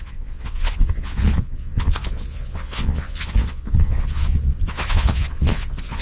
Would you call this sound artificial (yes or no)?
yes